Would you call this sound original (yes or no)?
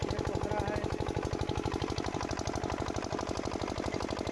yes